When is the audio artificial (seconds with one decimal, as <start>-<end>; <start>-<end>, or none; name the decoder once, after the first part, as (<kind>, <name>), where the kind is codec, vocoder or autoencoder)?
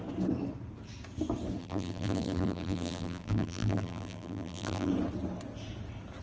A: 1.6-4.9 (vocoder, BigVGAN v2)